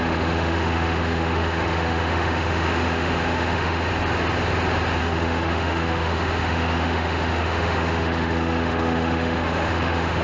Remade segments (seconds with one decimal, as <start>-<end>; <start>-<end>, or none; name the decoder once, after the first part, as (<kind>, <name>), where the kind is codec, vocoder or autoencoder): 0.0-3.9 (autoencoder, DAC-VAE); 5.0-10.2